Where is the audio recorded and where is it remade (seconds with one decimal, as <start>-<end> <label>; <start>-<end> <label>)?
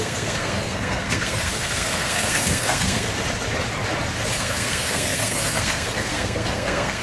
0.0-3.1 remade; 3.1-4.3 recorded; 4.3-7.0 remade